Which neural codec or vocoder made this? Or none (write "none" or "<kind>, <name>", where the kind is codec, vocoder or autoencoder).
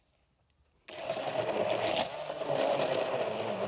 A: none